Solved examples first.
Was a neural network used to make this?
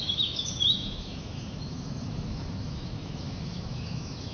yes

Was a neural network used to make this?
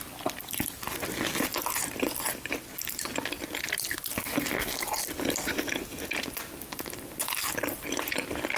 no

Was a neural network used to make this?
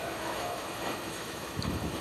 yes